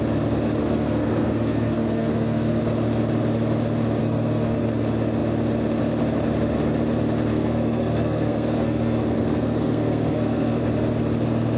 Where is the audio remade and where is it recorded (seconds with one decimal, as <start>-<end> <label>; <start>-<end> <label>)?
0.0-0.6 recorded; 0.6-2.6 remade; 2.6-4.0 recorded; 4.0-4.6 remade; 4.6-7.3 recorded; 7.3-10.6 remade; 10.6-11.6 recorded